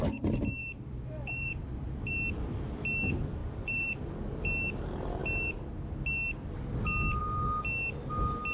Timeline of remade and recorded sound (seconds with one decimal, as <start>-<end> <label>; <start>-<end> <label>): 0.0-0.6 recorded; 0.6-2.1 remade; 2.1-3.4 recorded; 3.4-4.1 remade; 4.1-8.5 recorded